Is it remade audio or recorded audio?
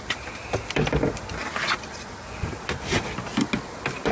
recorded